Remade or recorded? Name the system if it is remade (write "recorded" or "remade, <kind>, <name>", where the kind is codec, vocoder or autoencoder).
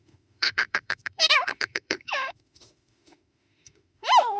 remade, autoencoder, DAC-VAE